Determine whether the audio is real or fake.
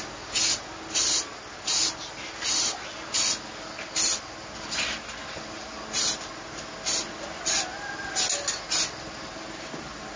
real